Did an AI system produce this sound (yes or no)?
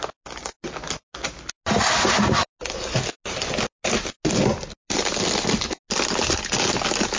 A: no